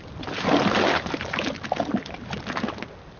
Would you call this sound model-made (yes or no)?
no